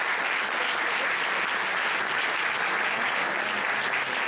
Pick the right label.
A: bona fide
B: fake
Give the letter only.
A